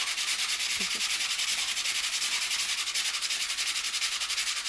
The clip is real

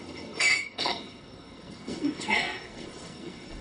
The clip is fake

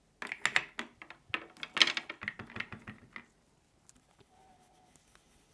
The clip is real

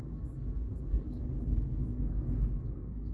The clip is fake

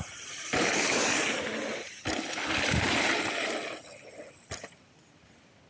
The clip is fake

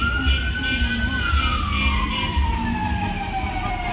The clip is real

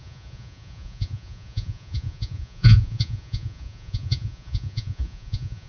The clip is fake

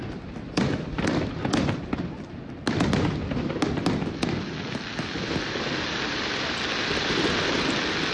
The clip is real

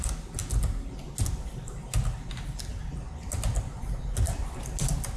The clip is real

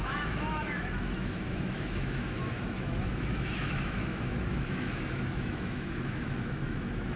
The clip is fake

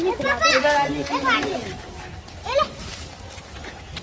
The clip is real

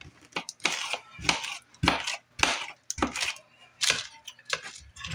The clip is real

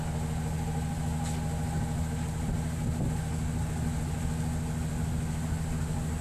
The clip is real